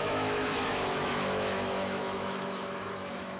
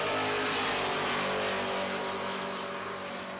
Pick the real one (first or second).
second